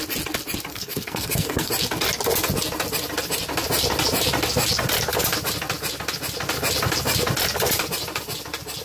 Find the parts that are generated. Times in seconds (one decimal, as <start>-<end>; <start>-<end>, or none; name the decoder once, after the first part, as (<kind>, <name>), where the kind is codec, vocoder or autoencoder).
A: 0.7-1.7 (codec, SNAC)